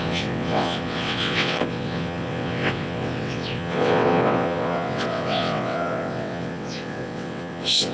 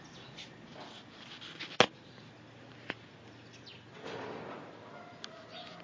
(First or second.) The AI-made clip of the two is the first